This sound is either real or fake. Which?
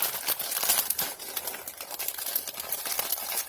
real